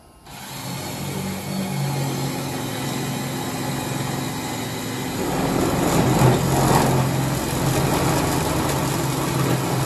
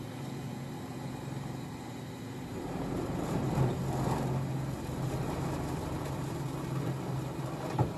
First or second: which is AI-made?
second